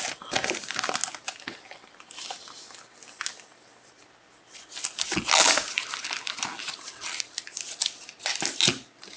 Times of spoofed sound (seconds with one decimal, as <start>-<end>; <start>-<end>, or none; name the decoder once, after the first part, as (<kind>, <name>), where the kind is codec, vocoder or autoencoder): none

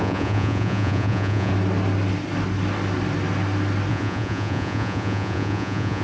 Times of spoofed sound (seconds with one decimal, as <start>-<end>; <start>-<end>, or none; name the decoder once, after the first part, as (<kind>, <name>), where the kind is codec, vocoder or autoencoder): 0.0-1.5 (vocoder, Vocos); 3.9-6.0